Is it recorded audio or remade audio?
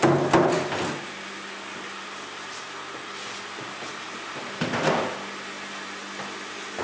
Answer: recorded